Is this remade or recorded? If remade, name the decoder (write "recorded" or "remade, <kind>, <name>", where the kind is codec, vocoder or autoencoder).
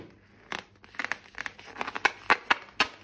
recorded